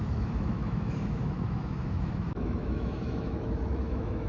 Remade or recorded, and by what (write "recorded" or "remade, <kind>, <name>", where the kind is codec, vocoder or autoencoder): remade, autoencoder, DAC-VAE